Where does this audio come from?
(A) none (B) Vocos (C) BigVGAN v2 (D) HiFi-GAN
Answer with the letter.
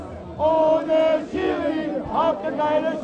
A